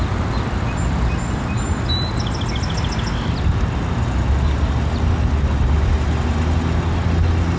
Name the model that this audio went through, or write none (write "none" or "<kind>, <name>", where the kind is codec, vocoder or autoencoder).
none